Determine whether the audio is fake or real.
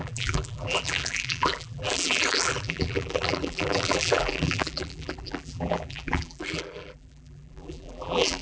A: fake